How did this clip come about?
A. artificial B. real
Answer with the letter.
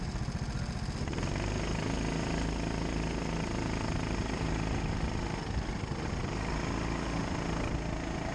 B